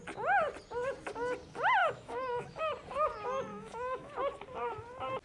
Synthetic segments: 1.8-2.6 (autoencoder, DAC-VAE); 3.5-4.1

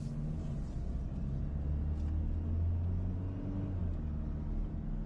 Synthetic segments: none